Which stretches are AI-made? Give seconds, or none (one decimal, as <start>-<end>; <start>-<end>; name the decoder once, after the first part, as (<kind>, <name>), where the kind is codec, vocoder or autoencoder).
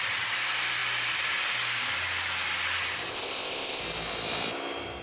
3.1-3.8 (codec, ZipCodec)